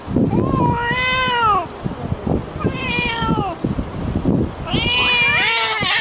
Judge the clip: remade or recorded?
recorded